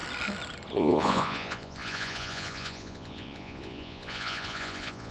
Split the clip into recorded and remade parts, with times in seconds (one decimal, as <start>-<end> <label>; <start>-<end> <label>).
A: 0.0-0.7 recorded; 0.7-5.1 remade